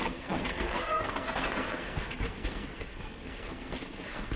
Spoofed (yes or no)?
yes